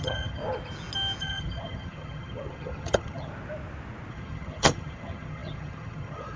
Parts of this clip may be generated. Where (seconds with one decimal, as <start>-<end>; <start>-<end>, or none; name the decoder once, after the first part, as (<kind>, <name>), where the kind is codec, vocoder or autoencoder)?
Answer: 0.0-0.4 (vocoder, HiFi-GAN); 1.2-3.3; 4.1-6.4